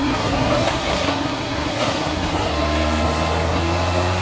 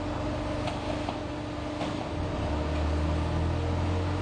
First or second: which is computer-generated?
first